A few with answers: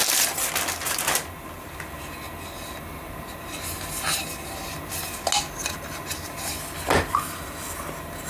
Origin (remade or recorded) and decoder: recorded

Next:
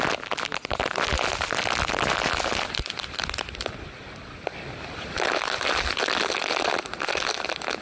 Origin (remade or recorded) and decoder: recorded